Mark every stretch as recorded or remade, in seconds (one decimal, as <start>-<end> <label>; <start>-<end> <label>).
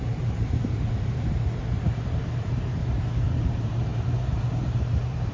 0.0-1.6 remade; 1.6-2.2 recorded; 2.2-2.8 remade; 2.8-3.4 recorded; 3.4-5.3 remade